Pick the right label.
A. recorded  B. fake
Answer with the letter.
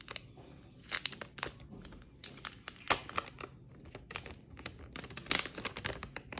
A